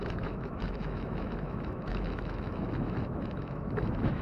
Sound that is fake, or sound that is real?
fake